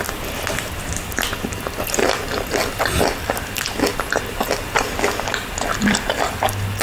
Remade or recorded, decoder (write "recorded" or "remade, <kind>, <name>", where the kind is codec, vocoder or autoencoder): recorded